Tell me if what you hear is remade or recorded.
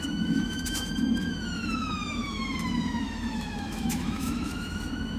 remade